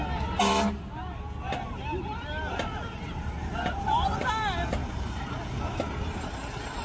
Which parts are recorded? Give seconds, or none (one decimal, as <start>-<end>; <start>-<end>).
0.0-4.8; 5.4-6.8